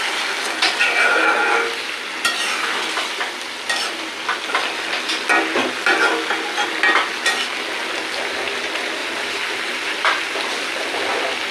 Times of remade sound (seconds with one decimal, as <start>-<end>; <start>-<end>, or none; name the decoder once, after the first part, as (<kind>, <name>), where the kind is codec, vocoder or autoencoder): 9.0-10.2 (vocoder, BigVGAN v2)